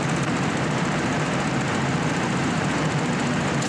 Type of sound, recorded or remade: remade